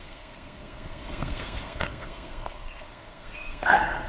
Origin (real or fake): fake